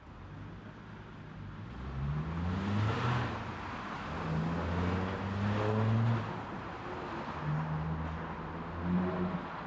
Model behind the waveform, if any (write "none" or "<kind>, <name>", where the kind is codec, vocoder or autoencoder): none